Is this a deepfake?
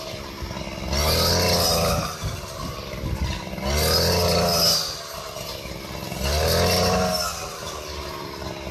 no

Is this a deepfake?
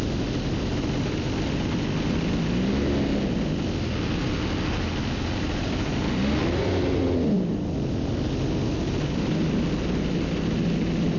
no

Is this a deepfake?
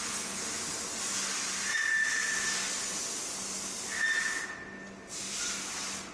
no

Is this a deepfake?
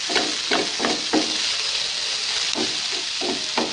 no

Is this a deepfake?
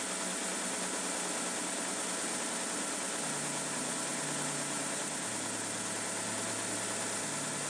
no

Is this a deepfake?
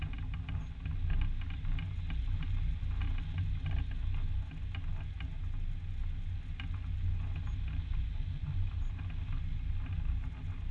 no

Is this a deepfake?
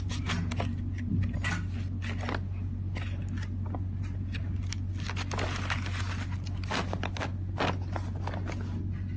no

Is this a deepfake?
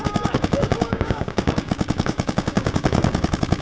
yes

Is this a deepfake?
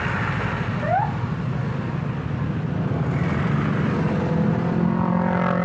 no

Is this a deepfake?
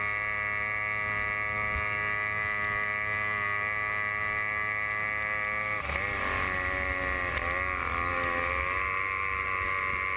no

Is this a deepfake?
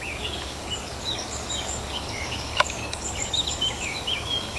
yes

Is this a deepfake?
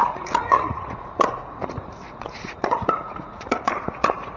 yes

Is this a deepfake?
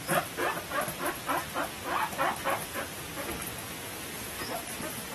no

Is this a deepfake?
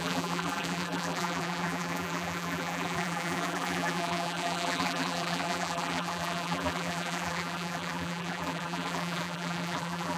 yes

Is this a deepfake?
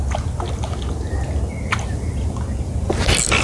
no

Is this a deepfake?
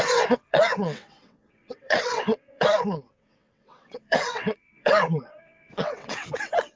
yes